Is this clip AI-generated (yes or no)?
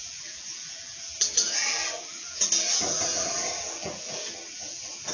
yes